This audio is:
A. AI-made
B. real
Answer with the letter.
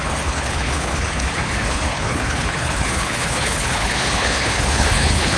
A